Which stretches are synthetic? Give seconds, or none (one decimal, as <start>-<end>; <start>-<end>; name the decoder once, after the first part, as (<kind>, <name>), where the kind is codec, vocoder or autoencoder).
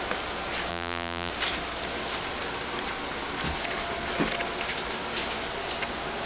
0.7-1.3 (vocoder, BigVGAN v2)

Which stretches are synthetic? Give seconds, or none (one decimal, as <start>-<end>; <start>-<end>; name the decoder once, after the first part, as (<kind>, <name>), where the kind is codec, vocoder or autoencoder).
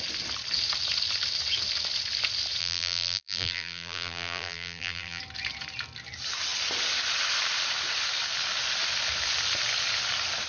2.6-5.2 (vocoder, BigVGAN v2)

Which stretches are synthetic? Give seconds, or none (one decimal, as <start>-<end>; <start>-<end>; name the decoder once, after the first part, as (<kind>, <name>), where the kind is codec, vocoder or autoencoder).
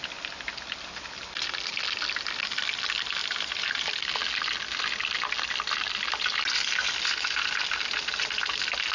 3.2-3.9 (vocoder, BigVGAN v2)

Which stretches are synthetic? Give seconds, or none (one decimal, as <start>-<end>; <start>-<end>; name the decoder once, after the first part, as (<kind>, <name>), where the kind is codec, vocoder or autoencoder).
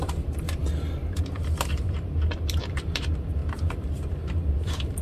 0.0-0.6 (vocoder, BigVGAN v2); 1.2-5.0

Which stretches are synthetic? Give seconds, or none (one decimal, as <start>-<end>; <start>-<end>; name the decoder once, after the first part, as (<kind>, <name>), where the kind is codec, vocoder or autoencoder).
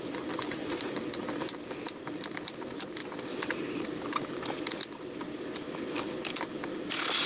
0.6-2.0 (vocoder, BigVGAN v2)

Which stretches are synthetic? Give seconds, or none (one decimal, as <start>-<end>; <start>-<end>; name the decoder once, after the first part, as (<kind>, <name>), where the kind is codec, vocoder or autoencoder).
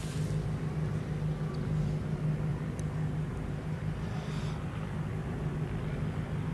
2.5-6.5 (vocoder, BigVGAN v2)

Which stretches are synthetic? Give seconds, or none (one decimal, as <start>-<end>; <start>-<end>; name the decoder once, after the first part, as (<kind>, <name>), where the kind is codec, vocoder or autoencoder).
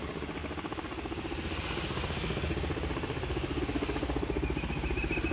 0.4-3.6 (vocoder, BigVGAN v2)